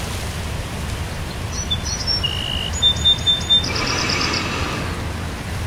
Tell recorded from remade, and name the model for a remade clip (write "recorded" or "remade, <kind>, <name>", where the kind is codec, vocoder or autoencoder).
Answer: recorded